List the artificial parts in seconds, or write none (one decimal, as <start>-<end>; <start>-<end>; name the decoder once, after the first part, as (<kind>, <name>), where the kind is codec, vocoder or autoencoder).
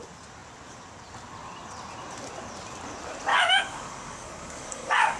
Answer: 3.3-5.2 (codec, DAC)